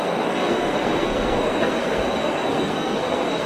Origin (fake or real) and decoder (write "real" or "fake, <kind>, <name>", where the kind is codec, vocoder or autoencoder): fake, codec, SNAC